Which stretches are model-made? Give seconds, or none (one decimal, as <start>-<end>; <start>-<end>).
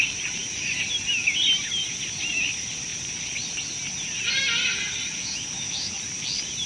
5.2-5.9